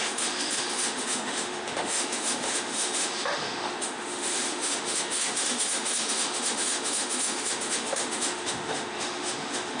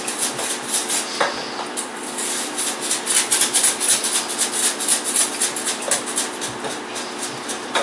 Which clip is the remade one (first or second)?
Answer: first